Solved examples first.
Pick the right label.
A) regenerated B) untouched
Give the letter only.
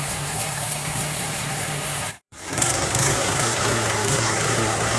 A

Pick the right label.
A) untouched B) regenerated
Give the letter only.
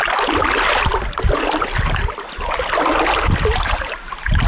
A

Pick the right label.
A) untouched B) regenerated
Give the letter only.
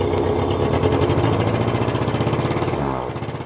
A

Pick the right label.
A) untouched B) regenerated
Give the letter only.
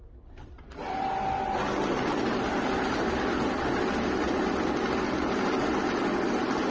A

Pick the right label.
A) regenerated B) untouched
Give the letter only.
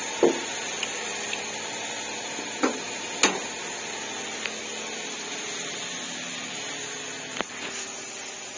B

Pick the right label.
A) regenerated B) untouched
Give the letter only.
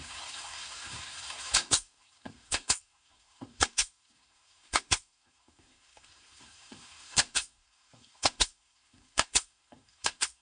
A